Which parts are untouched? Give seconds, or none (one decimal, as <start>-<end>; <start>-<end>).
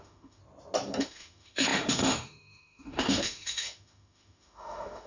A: 0.4-1.0